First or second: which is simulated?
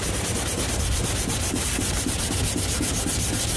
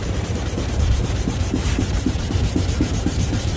second